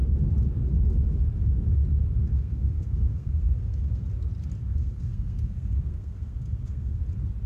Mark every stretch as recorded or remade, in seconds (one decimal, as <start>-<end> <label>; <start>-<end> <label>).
0.0-2.3 recorded; 2.3-4.1 remade; 4.1-4.7 recorded; 4.7-7.0 remade; 7.0-7.5 recorded